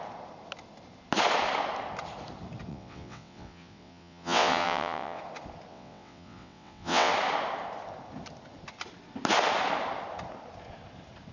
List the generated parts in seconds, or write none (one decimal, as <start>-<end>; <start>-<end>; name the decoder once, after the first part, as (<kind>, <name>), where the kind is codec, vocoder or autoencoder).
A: 2.7-5.2 (vocoder, WaveNeXt); 5.7-7.1